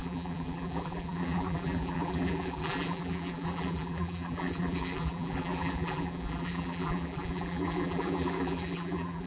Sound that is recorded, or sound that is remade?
remade